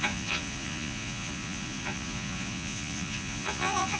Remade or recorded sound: remade